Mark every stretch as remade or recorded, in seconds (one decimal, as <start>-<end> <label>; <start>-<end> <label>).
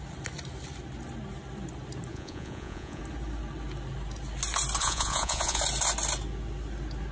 0.0-2.1 recorded; 2.1-3.0 remade; 3.0-4.8 recorded; 4.8-5.6 remade; 5.6-7.1 recorded